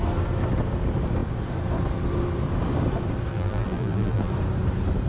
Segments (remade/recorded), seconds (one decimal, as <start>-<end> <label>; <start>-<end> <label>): 0.0-3.3 recorded; 3.3-4.3 remade; 4.3-5.1 recorded